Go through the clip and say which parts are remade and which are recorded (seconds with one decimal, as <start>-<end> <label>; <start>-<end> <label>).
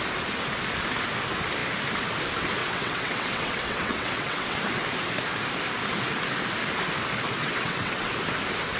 0.0-2.6 recorded; 2.6-4.6 remade; 4.6-7.4 recorded; 7.4-8.1 remade; 8.1-8.8 recorded